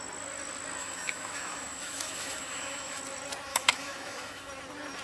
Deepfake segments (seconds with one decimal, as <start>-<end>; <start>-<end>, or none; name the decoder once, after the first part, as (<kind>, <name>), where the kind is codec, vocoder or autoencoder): 0.8-3.0 (autoencoder, DAC-VAE); 3.5-4.5